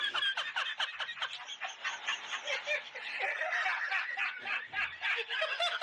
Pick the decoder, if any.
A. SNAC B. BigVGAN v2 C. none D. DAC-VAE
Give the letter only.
C